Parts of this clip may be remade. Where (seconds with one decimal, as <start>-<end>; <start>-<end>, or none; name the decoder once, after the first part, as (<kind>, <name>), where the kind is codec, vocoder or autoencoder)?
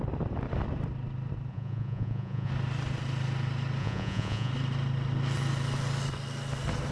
1.5-2.5 (vocoder, Vocos); 3.8-4.5